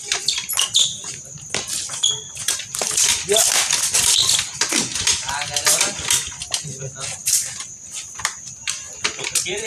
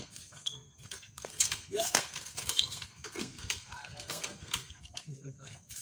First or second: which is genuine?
first